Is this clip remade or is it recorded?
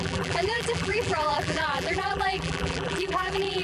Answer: remade